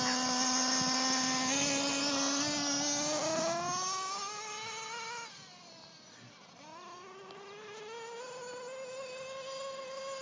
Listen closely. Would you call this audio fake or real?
real